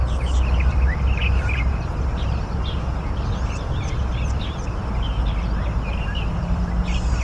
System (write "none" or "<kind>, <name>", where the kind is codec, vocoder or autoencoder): none